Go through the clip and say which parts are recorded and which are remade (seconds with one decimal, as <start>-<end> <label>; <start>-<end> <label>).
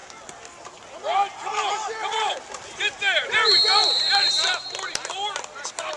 0.0-6.0 recorded